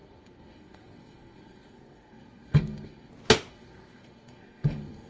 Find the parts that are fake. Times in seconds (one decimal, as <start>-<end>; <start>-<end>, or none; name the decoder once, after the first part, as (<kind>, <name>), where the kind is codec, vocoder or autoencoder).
0.0-3.1 (codec, SNAC); 3.5-5.1

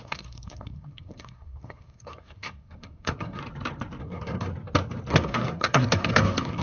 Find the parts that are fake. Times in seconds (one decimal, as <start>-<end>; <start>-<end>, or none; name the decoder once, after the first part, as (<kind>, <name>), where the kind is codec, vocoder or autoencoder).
0.0-3.4 (codec, SNAC); 4.0-4.5; 5.1-6.6

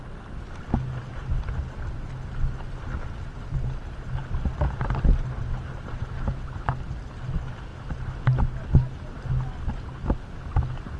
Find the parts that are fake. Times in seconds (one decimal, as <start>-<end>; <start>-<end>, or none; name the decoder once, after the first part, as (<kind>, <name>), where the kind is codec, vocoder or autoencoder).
none

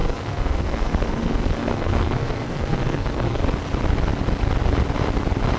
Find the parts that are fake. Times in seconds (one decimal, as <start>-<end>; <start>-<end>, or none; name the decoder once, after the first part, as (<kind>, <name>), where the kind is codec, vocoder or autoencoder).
0.0-3.4 (codec, SNAC)